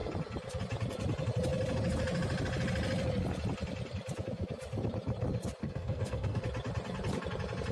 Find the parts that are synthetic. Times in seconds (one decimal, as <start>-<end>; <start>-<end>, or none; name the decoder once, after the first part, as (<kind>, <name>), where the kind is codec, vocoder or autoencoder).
5.6-6.4 (codec, SNAC)